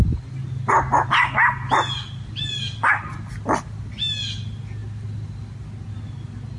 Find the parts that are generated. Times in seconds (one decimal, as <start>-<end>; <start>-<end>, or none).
none